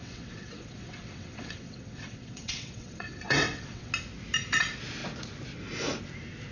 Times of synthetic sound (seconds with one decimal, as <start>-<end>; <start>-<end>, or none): 0.0-3.9